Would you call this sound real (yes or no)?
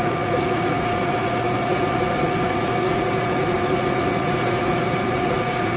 no